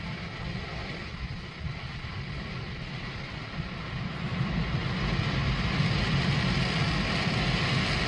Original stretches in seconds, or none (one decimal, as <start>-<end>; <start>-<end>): 0.0-8.1